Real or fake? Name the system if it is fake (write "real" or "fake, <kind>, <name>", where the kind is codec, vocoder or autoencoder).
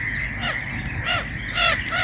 real